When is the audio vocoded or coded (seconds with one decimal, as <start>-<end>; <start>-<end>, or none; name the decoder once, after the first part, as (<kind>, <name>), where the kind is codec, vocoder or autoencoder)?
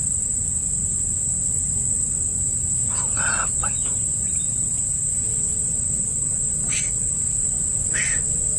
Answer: 2.3-6.8 (vocoder, BigVGAN v2)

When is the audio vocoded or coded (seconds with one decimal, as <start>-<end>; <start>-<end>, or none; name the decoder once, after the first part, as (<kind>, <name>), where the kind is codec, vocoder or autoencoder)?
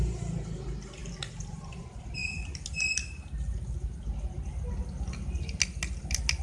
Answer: none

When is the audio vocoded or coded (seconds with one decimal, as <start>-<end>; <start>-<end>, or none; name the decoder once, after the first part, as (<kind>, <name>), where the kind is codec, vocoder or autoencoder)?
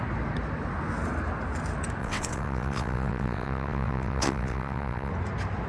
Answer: 2.0-5.1 (vocoder, WaveNeXt)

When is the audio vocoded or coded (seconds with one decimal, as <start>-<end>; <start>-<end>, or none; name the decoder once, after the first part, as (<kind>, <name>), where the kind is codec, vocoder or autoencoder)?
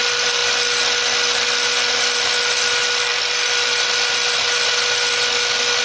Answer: none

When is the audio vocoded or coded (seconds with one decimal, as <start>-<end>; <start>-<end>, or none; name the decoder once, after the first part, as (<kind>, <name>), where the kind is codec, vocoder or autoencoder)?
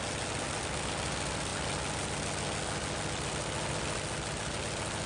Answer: none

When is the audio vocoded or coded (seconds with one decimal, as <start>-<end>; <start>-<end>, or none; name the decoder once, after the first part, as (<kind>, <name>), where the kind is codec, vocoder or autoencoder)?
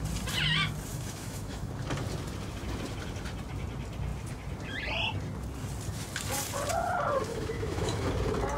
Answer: 0.9-1.7 (autoencoder, DAC-VAE); 7.3-8.1